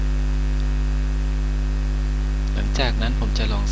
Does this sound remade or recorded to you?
recorded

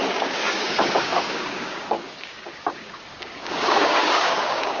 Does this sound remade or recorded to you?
remade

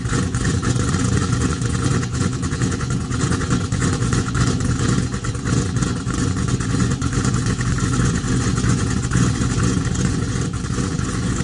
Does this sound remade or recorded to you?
remade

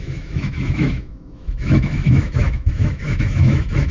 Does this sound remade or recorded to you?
remade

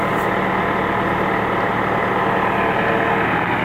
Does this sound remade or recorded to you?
recorded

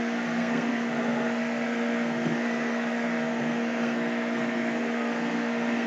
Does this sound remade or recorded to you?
remade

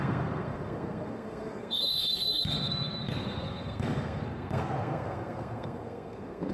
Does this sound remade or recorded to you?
remade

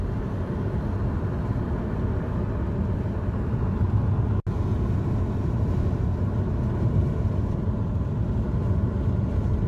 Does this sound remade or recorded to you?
recorded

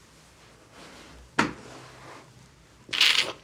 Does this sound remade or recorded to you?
recorded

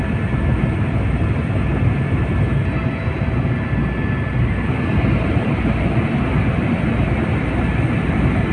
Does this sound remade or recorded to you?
recorded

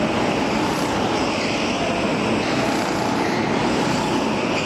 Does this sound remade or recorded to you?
recorded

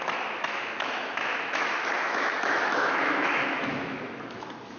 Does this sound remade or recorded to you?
remade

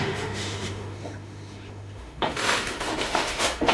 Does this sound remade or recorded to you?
remade